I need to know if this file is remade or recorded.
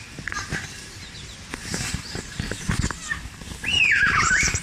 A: remade